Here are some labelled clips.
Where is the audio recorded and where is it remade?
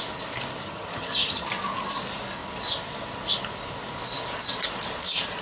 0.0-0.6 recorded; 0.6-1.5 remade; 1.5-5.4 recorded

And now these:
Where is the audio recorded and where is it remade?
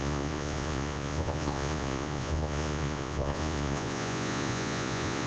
0.0-5.3 remade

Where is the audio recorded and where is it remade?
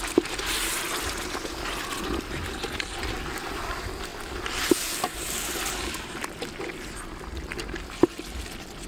0.0-4.1 recorded; 4.1-5.6 remade; 5.6-8.9 recorded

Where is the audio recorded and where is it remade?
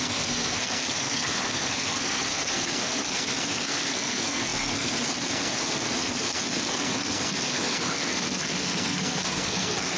0.0-10.0 remade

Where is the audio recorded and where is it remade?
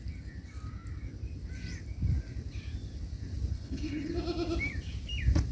0.0-3.5 recorded; 3.5-4.1 remade; 4.1-5.5 recorded